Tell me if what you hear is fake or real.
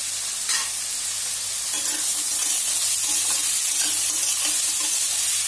real